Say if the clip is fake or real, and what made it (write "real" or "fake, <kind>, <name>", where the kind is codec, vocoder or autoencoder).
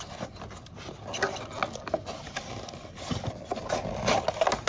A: real